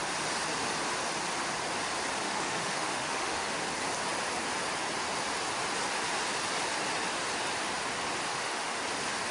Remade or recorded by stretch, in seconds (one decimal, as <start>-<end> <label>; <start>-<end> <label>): 0.0-2.2 recorded; 2.2-3.5 remade; 3.5-8.3 recorded; 8.3-8.8 remade; 8.8-9.3 recorded